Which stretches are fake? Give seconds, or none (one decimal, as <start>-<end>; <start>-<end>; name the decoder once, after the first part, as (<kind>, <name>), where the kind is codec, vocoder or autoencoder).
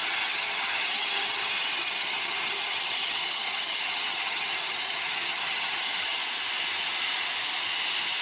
0.0-6.2 (vocoder, HiFi-GAN)